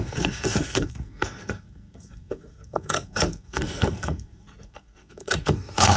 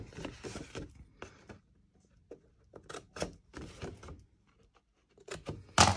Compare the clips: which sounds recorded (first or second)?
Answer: second